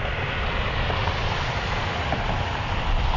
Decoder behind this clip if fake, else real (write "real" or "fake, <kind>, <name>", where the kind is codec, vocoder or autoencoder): real